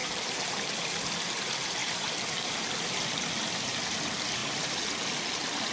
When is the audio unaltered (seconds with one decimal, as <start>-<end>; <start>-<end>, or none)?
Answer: 1.0-1.8; 2.8-5.7